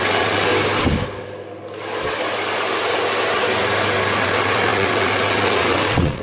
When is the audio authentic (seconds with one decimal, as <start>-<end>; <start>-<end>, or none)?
0.5-4.2

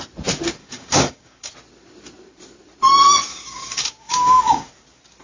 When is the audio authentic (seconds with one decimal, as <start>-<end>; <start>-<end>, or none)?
0.0-0.6; 1.5-3.3; 4.7-5.2

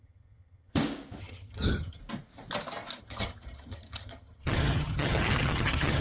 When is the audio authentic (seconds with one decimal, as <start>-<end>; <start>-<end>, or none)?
0.7-1.2; 2.0-3.0

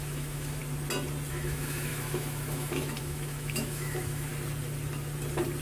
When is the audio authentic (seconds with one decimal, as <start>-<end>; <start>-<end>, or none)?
0.6-1.3; 4.3-5.6

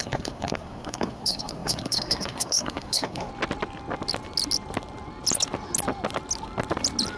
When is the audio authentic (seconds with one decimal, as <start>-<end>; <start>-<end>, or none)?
3.3-7.2

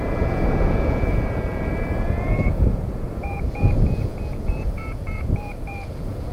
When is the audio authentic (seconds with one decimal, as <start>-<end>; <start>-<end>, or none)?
none

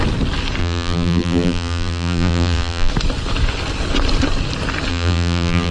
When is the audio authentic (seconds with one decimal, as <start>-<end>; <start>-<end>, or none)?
0.0-0.6; 2.9-4.9

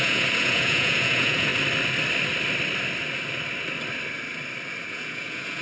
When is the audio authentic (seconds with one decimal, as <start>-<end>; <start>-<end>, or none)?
1.5-4.9